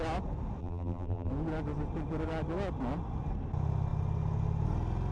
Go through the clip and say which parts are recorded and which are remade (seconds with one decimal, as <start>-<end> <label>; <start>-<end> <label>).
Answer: 0.0-0.6 recorded; 0.6-1.3 remade; 1.3-5.1 recorded